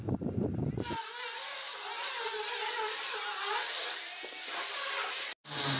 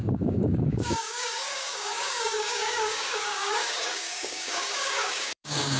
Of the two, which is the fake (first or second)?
second